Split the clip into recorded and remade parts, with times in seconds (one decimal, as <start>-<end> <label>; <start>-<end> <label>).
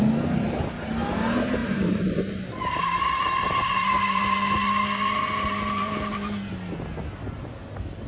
0.0-1.6 recorded; 1.6-6.5 remade; 6.5-8.1 recorded